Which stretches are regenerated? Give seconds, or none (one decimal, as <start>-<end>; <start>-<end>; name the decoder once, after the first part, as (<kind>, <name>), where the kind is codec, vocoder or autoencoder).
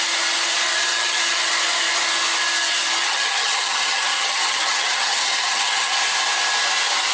0.8-1.4 (vocoder, HiFi-GAN); 3.0-5.9